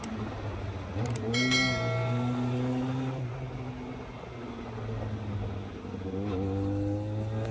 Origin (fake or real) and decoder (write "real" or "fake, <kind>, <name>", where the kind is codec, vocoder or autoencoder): real